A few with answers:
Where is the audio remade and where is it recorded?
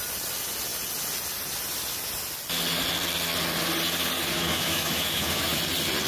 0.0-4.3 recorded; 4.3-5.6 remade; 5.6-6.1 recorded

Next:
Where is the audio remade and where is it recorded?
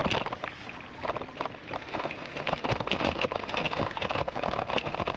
0.0-1.8 recorded; 1.8-5.2 remade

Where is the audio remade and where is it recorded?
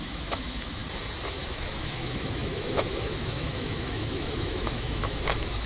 0.0-0.8 remade; 0.8-1.4 recorded; 1.4-5.7 remade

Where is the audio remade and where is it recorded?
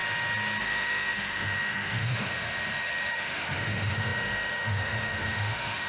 0.0-0.6 recorded; 0.6-5.9 remade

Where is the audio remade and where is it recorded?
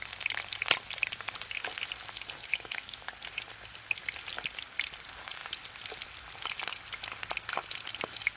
0.0-2.5 recorded; 2.5-3.1 remade; 3.1-8.4 recorded